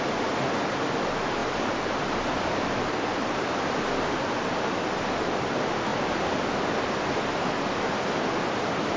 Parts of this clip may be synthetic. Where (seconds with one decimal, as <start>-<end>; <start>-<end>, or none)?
none